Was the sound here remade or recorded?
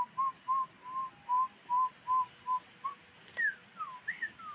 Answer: recorded